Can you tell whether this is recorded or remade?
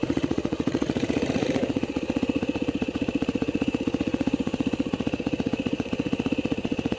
remade